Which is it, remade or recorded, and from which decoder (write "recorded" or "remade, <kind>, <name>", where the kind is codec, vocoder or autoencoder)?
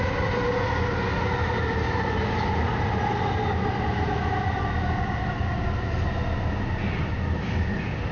recorded